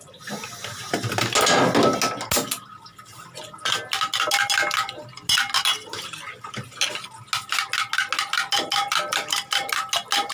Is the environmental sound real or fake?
real